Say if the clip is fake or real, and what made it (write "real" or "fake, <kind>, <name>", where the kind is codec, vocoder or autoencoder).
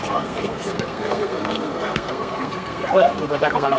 fake, codec, SNAC